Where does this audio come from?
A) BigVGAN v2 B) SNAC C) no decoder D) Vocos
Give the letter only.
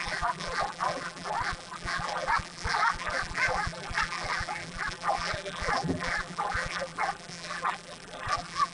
A